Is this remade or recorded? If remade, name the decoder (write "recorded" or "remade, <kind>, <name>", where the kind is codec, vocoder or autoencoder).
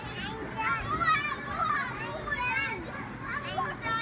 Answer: recorded